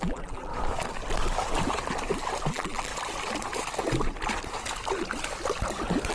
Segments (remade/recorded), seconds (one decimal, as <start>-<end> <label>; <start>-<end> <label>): 0.0-0.5 remade; 0.5-2.5 recorded; 2.5-2.9 remade; 2.9-6.1 recorded